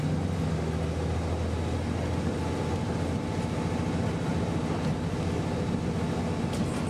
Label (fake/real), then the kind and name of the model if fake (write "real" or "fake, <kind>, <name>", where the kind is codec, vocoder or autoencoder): real